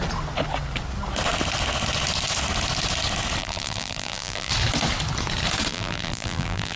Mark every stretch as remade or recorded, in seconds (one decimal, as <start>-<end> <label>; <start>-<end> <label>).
0.0-3.4 recorded; 3.4-4.5 remade; 4.5-5.7 recorded; 5.7-6.8 remade

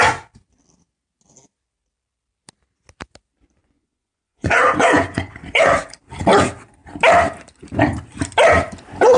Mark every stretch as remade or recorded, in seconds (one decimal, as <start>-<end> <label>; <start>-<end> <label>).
0.0-3.6 recorded; 3.6-5.8 remade; 5.8-9.2 recorded

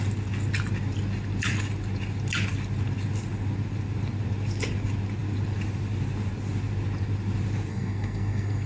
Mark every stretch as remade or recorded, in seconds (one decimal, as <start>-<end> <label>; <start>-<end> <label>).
0.0-7.7 recorded; 7.7-8.7 remade

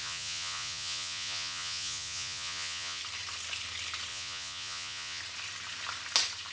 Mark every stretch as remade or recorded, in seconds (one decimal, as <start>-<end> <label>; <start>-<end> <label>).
0.0-3.0 remade; 3.0-4.1 recorded; 4.1-5.2 remade; 5.2-6.5 recorded